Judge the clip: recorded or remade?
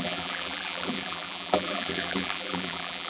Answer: remade